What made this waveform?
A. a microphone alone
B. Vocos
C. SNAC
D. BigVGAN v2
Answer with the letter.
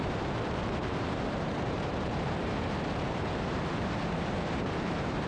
D